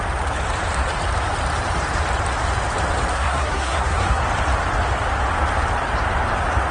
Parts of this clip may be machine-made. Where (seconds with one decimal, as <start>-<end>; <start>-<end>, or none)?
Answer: 3.1-4.2